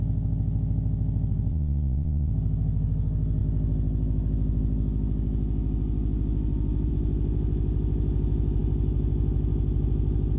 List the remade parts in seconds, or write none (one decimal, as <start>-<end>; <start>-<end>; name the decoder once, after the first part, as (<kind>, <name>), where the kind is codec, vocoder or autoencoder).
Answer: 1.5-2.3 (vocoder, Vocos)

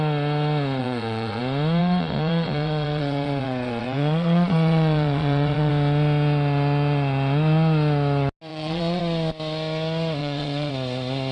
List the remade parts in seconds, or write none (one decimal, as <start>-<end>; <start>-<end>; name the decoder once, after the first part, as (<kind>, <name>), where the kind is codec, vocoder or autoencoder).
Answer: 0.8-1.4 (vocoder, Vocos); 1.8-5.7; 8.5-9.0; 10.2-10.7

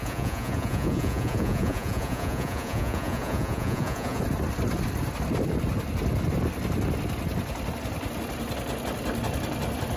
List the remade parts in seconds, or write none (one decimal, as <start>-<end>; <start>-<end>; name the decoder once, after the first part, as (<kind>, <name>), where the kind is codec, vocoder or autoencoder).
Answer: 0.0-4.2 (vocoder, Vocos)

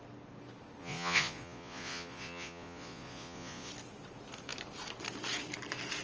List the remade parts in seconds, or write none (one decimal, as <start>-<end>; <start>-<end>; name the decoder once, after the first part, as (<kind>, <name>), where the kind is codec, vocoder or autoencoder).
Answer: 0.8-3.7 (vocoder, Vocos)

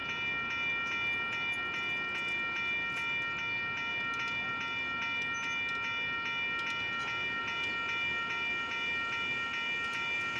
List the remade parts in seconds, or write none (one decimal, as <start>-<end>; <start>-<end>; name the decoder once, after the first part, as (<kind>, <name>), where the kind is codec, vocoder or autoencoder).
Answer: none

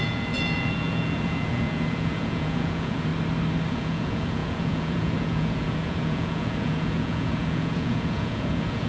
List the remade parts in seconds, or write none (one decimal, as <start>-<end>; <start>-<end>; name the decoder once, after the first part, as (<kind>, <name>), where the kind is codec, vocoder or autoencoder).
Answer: 0.0-3.1 (vocoder, Vocos); 3.7-8.9

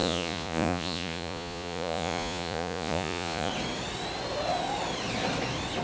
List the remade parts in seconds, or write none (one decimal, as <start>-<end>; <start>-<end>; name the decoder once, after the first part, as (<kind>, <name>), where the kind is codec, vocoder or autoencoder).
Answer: 0.0-3.5 (vocoder, Vocos)